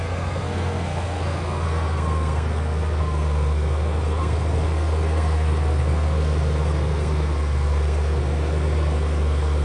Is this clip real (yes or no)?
no